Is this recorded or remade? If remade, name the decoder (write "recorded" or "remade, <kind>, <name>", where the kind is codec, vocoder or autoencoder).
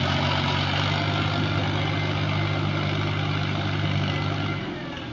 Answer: recorded